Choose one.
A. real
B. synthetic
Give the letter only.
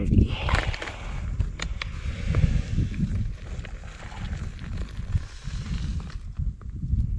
A